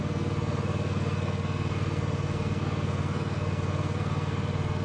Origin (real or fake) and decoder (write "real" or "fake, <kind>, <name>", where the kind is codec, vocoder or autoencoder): fake, codec, SNAC